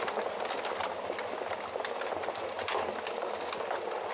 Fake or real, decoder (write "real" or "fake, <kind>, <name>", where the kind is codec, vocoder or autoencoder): real